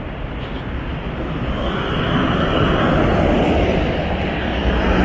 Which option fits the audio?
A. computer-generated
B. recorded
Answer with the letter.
B